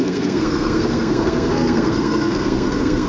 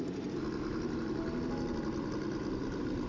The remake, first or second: first